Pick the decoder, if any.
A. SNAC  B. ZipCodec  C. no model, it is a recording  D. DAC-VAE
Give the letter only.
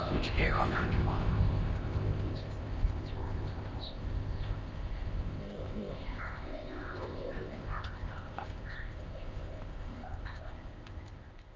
B